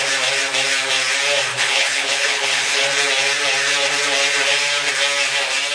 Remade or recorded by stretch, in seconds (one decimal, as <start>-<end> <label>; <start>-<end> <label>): 0.0-1.5 recorded; 1.5-2.8 remade; 2.8-5.7 recorded